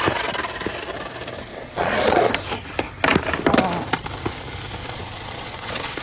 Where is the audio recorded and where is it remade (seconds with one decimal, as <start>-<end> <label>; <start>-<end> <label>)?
0.0-1.5 recorded; 1.5-2.3 remade; 2.3-4.8 recorded; 4.8-6.0 remade